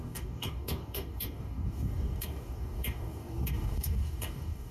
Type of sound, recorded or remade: remade